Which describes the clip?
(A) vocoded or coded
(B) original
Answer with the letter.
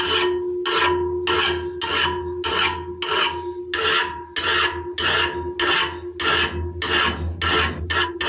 B